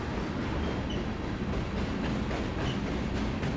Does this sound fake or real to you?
real